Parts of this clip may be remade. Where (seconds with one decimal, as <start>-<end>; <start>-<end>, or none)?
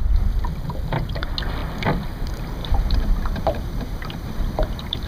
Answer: 2.6-5.1